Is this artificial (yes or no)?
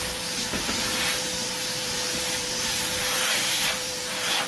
yes